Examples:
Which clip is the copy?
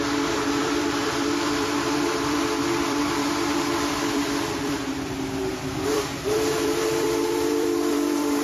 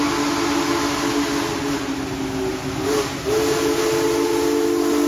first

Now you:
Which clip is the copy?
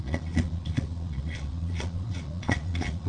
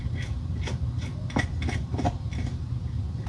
first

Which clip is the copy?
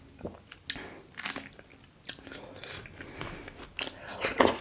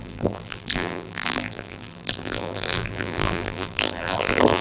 second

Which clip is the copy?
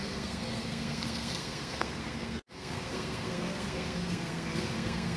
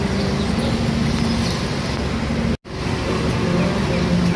first